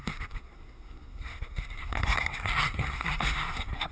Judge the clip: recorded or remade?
remade